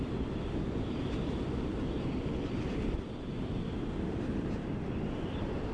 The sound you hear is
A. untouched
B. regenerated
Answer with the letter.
B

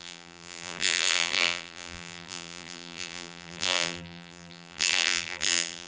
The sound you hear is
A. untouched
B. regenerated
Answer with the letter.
B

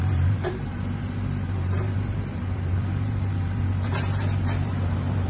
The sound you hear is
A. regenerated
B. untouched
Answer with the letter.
A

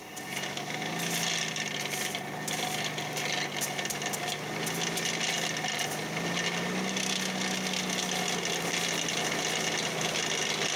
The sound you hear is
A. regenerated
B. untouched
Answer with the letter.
B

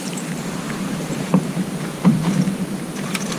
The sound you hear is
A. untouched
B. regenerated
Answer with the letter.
B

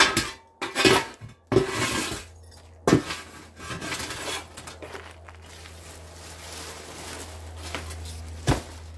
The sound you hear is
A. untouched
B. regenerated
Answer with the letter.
A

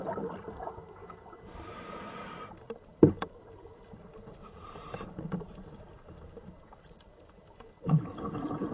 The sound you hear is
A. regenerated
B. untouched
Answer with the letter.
A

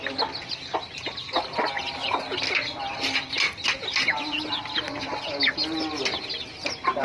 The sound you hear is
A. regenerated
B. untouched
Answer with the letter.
B